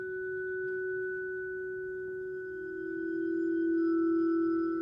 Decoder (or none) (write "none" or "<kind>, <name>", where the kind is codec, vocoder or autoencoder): none